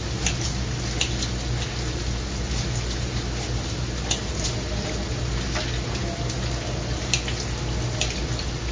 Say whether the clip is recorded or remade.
recorded